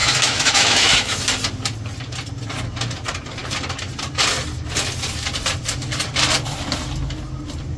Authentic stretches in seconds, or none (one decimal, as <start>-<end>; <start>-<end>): 1.2-7.8